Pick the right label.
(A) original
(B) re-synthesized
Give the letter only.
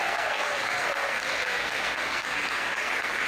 B